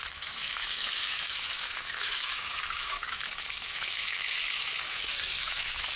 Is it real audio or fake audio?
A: fake